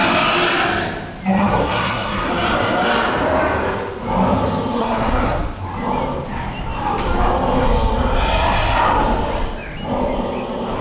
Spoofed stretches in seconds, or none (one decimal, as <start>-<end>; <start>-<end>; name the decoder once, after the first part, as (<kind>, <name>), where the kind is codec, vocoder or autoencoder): 1.3-2.3 (codec, SNAC); 4.8-5.4